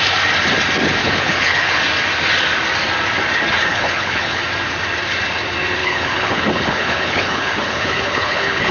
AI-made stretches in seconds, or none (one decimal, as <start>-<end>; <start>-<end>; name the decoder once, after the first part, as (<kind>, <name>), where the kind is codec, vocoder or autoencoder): 1.0-1.8 (codec, HILCodec); 3.7-4.4; 5.8-8.7